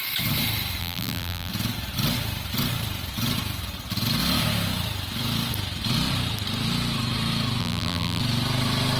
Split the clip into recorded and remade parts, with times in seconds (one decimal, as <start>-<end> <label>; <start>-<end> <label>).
0.0-0.8 recorded; 0.8-1.5 remade; 1.5-7.6 recorded; 7.6-8.2 remade; 8.2-9.0 recorded